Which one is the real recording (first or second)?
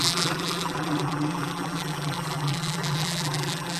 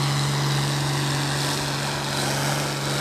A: second